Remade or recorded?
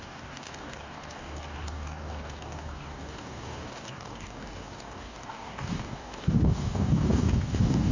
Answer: remade